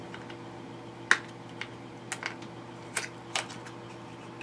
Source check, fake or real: real